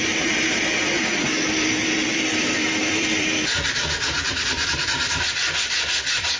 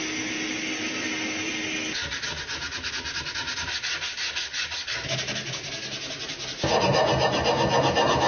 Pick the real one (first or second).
second